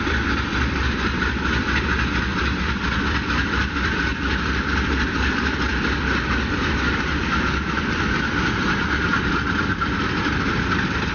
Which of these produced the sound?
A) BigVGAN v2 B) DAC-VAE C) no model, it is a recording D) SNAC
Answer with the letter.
A